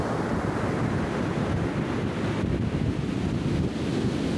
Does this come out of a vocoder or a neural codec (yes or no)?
no